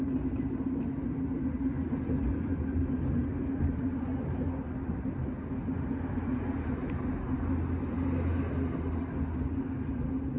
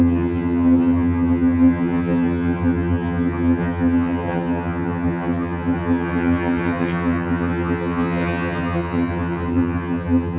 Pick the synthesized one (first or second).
second